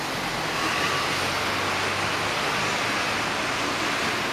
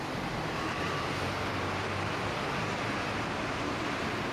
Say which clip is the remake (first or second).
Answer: second